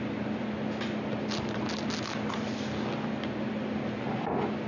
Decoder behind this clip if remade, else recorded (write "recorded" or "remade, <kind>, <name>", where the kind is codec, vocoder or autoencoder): recorded